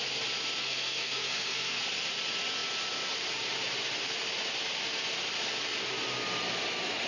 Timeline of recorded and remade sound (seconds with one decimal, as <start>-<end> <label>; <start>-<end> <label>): 0.0-0.6 recorded; 0.6-1.8 remade; 1.8-7.1 recorded